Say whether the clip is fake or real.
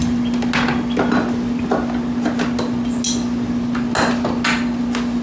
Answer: real